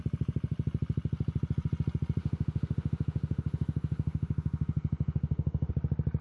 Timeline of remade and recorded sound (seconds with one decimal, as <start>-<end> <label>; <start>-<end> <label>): 0.0-2.2 recorded; 2.2-5.7 remade; 5.7-6.2 recorded